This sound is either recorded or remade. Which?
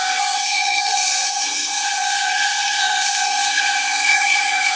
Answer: remade